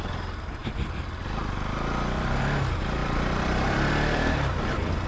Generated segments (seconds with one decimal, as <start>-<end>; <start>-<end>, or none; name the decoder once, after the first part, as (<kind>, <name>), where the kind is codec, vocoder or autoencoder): 3.0-3.9 (vocoder, BigVGAN v2)